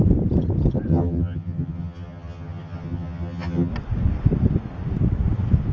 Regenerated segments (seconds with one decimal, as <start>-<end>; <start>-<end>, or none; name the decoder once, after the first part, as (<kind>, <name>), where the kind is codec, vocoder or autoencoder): 0.9-3.7 (vocoder, HiFi-GAN)